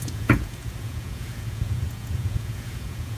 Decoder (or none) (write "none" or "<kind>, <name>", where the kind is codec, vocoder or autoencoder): vocoder, Vocos